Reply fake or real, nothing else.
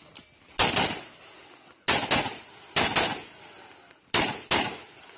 real